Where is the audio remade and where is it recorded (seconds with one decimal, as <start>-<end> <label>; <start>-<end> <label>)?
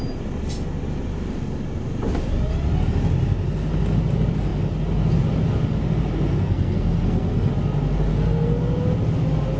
0.0-6.3 recorded; 6.3-7.5 remade; 7.5-8.1 recorded; 8.1-8.6 remade; 8.6-9.6 recorded